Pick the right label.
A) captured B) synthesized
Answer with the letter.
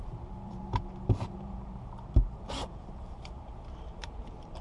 B